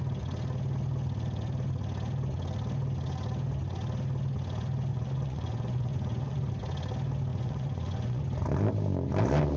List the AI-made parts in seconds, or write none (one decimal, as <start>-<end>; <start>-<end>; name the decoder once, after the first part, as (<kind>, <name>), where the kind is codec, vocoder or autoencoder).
4.9-6.5 (vocoder, Vocos); 7.3-8.2